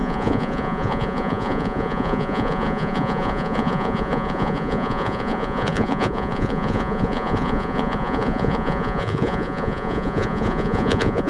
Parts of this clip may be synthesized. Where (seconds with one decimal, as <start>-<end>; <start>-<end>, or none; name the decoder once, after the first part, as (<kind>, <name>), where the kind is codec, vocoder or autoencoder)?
0.0-11.3 (vocoder, Vocos)